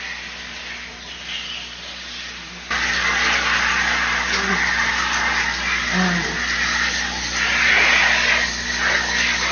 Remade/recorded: recorded